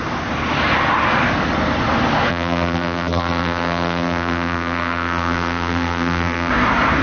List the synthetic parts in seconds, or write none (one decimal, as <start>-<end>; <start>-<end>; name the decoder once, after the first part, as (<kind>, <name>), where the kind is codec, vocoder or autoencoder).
2.3-6.5 (vocoder, BigVGAN v2)